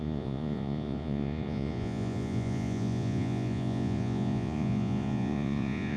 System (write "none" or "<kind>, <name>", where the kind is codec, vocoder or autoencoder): vocoder, Vocos